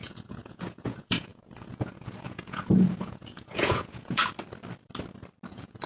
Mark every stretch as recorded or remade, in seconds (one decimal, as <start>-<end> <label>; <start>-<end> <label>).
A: 0.0-4.2 remade; 4.2-5.5 recorded; 5.5-5.9 remade